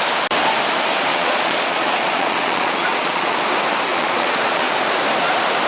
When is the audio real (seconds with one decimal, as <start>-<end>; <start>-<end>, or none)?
0.0-1.1; 3.4-3.9; 4.7-5.7